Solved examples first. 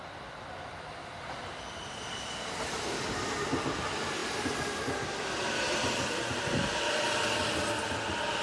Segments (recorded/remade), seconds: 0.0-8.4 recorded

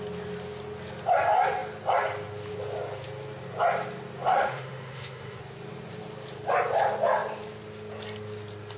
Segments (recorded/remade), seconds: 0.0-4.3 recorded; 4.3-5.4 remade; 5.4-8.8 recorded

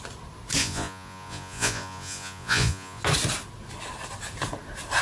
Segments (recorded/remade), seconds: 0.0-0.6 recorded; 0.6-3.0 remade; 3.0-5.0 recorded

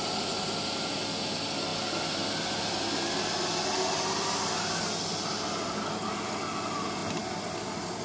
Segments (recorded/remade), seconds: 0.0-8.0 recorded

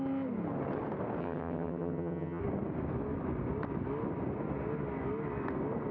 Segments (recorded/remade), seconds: 0.0-1.2 recorded; 1.2-2.4 remade; 2.4-5.9 recorded

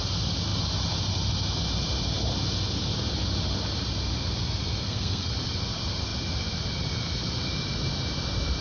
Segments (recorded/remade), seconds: 0.0-4.8 recorded; 4.8-5.3 remade; 5.3-8.6 recorded

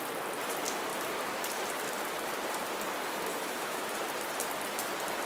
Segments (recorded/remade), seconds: 0.0-3.3 recorded; 3.3-3.8 remade; 3.8-5.3 recorded

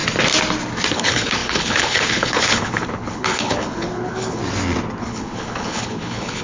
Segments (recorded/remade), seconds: 0.0-0.9 recorded; 0.9-4.4 remade; 4.4-5.0 recorded; 5.0-6.4 remade